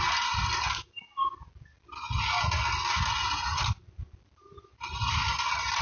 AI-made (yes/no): no